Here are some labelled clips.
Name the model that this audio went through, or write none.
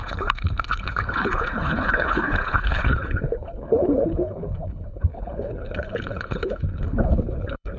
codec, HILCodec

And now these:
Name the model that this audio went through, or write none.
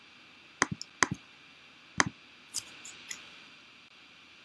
none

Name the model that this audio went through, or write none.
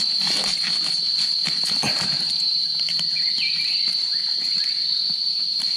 vocoder, BigVGAN v2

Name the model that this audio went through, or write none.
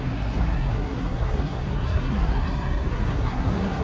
codec, SNAC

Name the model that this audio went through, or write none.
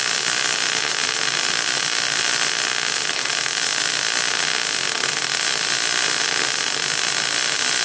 none